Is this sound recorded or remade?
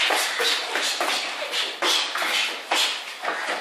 recorded